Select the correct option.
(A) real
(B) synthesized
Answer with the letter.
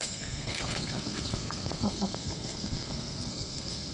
B